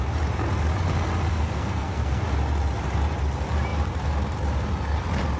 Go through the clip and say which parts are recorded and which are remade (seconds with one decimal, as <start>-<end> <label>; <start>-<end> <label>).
0.0-1.3 recorded; 1.3-2.2 remade; 2.2-5.4 recorded